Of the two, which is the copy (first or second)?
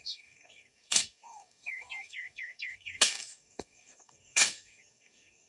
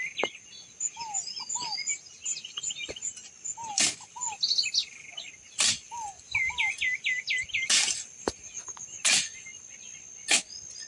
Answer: first